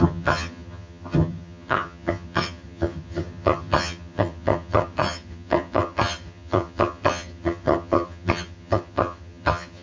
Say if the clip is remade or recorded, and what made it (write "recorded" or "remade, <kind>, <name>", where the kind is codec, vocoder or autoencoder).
remade, vocoder, HiFi-GAN